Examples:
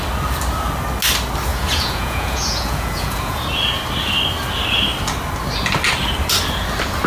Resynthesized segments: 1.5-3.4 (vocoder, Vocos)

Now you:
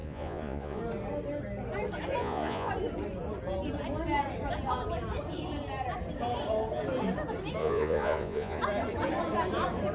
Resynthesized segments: 0.0-0.8 (vocoder, Vocos); 2.2-2.7; 7.6-8.6

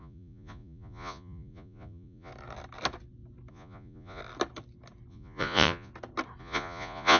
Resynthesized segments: 0.0-2.3 (vocoder, Vocos); 3.5-4.2; 5.1-5.9; 6.4-7.2

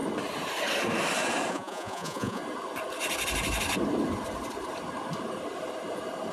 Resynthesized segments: 1.5-2.4 (vocoder, Vocos)

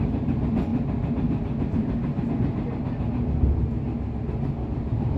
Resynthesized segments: none

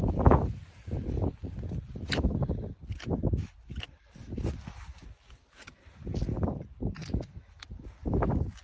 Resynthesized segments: none